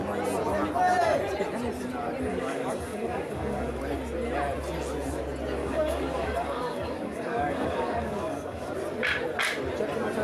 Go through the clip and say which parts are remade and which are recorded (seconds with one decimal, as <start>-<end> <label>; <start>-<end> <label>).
0.0-2.3 recorded; 2.3-3.8 remade; 3.8-5.6 recorded; 5.6-8.7 remade; 8.7-10.2 recorded